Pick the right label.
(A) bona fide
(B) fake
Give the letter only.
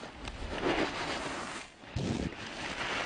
A